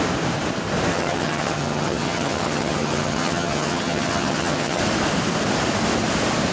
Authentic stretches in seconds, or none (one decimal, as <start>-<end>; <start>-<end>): 0.0-0.9; 4.8-6.5